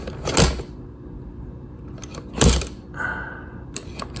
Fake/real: real